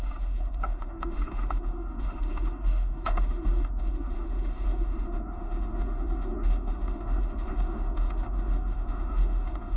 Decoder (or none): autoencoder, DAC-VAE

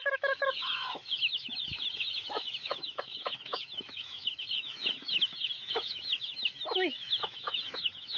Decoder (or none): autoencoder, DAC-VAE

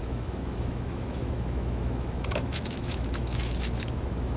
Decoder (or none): autoencoder, DAC-VAE